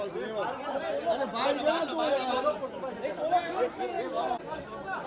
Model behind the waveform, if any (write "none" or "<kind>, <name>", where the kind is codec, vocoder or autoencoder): none